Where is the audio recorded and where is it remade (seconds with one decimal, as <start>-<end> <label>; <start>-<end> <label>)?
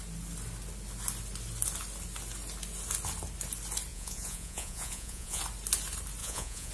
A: 0.0-3.9 recorded; 3.9-5.4 remade; 5.4-6.2 recorded; 6.2-6.7 remade